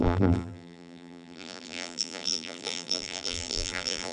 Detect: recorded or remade remade